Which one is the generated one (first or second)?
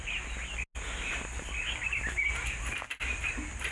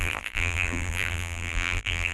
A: second